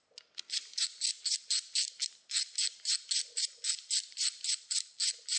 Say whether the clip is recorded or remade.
recorded